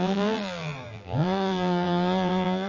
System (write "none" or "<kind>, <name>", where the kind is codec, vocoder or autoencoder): vocoder, BigVGAN v2